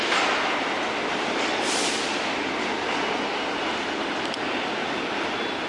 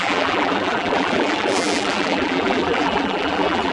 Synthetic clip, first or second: second